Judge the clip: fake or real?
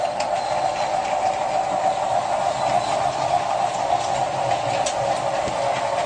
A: real